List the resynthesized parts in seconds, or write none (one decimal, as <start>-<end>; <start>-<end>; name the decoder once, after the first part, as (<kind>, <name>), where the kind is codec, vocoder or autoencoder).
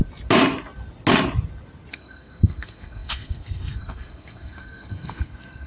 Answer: 1.9-5.7 (codec, SNAC)